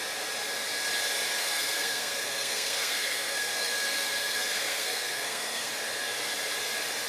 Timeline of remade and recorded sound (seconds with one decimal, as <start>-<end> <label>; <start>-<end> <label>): 0.0-1.4 recorded; 1.4-5.7 remade; 5.7-7.1 recorded